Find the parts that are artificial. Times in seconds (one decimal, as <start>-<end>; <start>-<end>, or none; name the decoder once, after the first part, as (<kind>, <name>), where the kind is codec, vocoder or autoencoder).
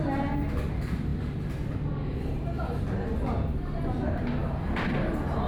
none